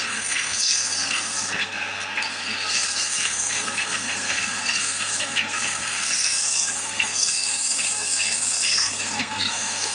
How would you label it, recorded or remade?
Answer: remade